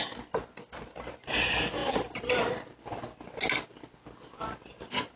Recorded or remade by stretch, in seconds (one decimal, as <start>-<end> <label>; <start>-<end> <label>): 0.0-5.2 recorded